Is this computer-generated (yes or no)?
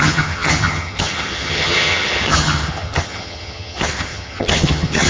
yes